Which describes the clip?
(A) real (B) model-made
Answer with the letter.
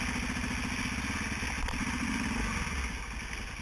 A